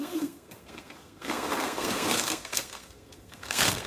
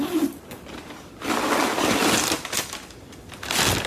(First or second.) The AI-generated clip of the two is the first